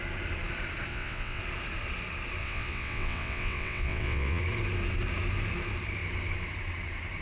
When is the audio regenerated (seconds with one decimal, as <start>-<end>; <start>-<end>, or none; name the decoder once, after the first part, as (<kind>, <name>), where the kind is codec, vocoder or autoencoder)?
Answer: 0.9-1.4 (vocoder, WaveNeXt); 2.4-4.4